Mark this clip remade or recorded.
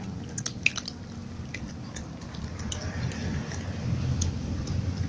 recorded